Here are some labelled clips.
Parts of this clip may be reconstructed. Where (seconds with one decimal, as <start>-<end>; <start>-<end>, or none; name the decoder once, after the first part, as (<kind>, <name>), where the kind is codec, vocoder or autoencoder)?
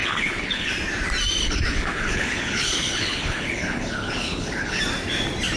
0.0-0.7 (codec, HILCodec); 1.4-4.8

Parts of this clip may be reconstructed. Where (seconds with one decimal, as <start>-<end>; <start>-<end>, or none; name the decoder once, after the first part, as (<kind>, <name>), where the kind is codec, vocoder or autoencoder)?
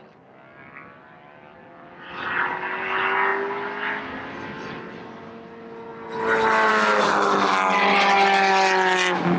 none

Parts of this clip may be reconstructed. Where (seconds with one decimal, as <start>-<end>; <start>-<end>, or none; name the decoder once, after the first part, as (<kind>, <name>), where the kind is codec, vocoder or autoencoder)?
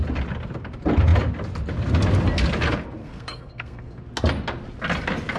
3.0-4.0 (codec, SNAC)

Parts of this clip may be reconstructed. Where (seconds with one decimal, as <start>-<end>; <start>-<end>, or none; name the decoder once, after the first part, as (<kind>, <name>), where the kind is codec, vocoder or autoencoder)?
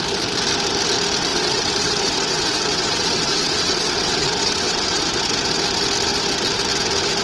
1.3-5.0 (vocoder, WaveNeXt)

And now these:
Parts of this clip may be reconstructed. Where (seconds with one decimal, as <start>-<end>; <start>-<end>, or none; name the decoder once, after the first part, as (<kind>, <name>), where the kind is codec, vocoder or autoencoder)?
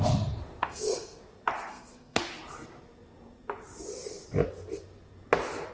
0.6-1.2 (codec, SNAC); 1.7-2.2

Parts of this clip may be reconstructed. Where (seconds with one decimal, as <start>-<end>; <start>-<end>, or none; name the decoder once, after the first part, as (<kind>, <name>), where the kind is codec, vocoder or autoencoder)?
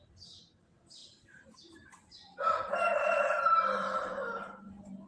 1.0-4.1 (vocoder, BigVGAN v2)